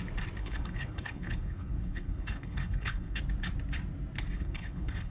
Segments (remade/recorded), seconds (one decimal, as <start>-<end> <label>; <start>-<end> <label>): 0.0-0.4 recorded; 0.4-3.2 remade; 3.2-4.3 recorded; 4.3-5.1 remade